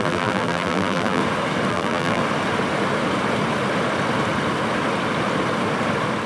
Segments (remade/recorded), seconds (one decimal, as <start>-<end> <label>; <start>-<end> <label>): 0.0-1.2 remade; 1.2-1.7 recorded; 1.7-2.2 remade; 2.2-6.3 recorded